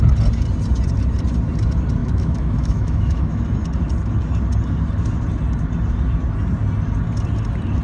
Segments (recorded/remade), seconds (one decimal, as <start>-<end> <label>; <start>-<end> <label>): 0.0-2.0 recorded; 2.0-3.4 remade; 3.4-7.8 recorded